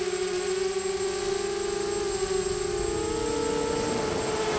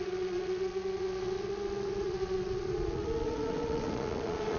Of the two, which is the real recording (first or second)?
first